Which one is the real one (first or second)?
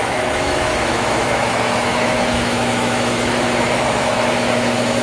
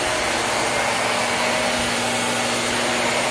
second